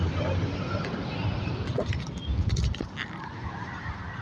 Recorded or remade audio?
recorded